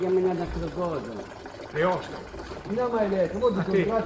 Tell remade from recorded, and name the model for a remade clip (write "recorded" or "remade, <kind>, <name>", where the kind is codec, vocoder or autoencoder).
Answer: recorded